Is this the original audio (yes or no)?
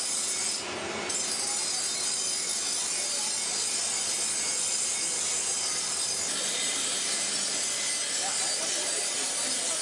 yes